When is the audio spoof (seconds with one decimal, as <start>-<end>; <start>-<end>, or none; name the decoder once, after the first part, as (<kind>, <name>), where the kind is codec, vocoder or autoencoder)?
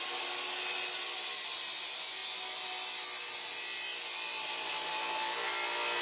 none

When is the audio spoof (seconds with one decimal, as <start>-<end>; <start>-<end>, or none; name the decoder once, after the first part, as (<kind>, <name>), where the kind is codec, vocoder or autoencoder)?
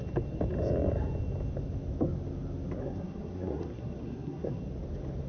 2.8-4.6 (codec, SNAC)